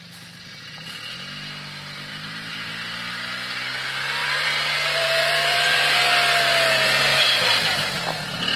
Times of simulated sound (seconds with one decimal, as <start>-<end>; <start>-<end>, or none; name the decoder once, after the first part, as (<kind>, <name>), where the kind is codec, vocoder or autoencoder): 2.1-2.9 (vocoder, BigVGAN v2); 4.2-6.0; 7.1-8.0